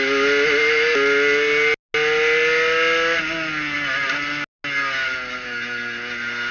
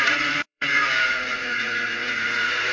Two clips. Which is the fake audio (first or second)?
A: second